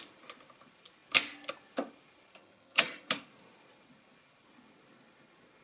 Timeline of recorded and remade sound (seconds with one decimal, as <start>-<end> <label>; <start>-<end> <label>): 0.0-2.4 recorded; 2.4-3.1 remade; 3.1-5.6 recorded